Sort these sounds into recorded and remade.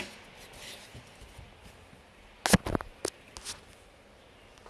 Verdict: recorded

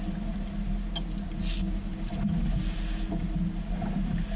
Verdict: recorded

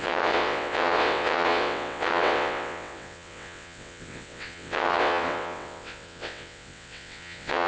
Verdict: remade